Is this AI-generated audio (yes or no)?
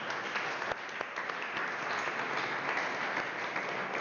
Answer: no